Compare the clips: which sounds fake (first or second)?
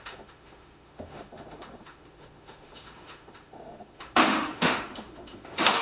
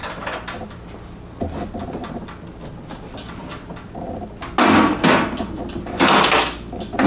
first